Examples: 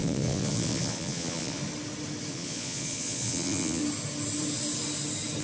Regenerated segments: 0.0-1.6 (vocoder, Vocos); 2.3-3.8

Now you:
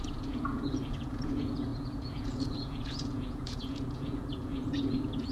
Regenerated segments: 0.0-5.3 (vocoder, Vocos)